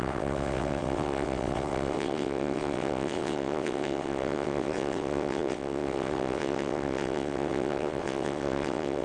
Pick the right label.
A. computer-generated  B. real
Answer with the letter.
A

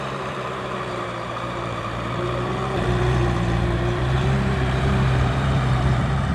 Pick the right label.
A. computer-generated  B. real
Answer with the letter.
A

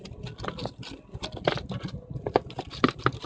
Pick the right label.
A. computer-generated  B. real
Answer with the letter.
B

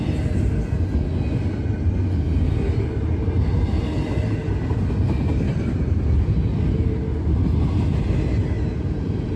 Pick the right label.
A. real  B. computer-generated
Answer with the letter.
A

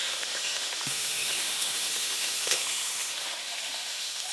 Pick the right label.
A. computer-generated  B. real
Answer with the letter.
A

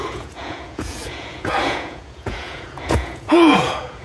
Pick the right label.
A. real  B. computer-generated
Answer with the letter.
B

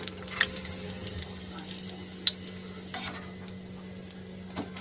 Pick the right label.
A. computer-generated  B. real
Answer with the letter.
B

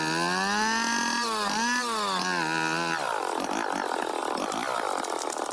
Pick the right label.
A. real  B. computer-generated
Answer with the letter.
A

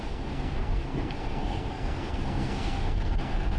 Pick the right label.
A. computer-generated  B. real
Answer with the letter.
A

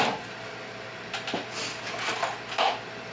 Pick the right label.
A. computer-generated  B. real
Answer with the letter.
B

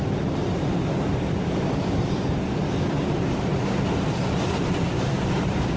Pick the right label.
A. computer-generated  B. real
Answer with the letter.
B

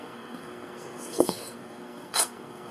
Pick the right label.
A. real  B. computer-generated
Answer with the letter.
B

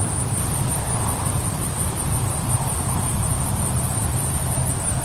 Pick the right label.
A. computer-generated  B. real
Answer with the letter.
A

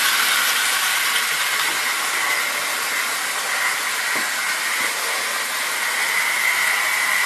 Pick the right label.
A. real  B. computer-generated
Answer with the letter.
A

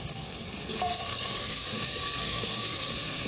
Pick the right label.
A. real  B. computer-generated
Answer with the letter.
B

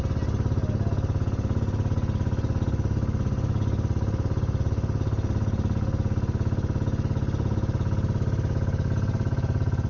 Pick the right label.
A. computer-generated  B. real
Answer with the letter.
B